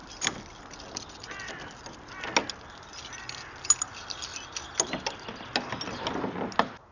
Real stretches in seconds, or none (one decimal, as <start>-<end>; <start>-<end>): 0.0-6.9